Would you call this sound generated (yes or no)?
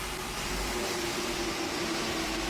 no